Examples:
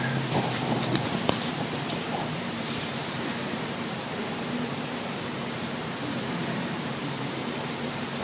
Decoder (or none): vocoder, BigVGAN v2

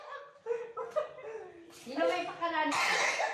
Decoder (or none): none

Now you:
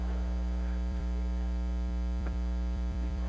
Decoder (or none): vocoder, BigVGAN v2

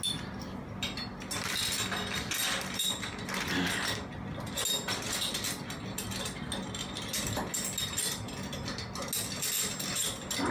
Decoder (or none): none